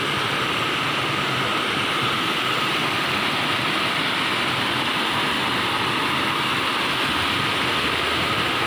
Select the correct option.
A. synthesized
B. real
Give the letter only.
B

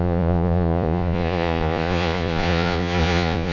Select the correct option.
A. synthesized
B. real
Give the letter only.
A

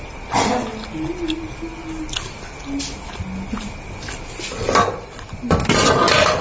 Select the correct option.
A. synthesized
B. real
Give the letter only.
B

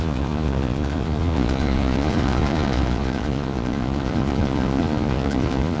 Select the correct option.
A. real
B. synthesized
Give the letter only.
B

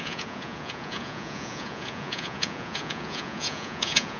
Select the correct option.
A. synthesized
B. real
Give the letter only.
A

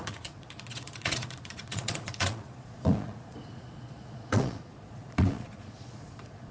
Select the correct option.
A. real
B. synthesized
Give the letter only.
B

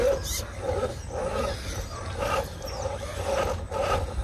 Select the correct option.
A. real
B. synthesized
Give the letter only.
A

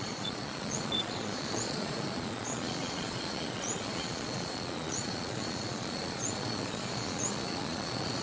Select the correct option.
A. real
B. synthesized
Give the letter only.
B